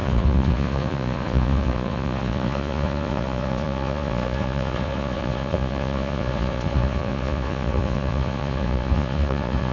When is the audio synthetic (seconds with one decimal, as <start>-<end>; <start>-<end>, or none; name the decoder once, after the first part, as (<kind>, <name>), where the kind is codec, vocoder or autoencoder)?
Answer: 0.0-9.7 (vocoder, Vocos)